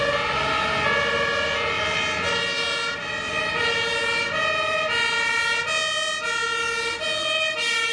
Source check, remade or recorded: recorded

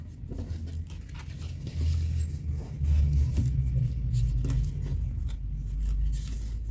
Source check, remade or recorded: recorded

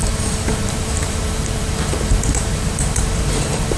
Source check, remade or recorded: remade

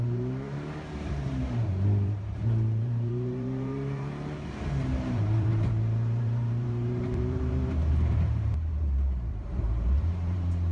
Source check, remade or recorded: remade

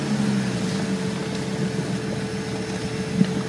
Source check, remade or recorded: recorded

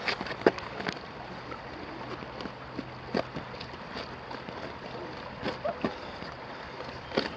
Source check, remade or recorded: recorded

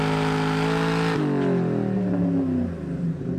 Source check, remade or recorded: recorded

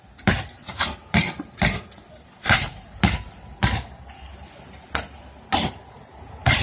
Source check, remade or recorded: remade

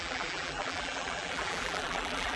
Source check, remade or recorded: remade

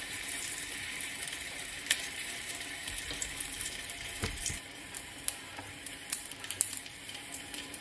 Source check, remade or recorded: remade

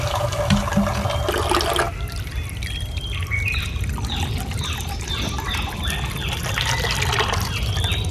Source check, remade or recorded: recorded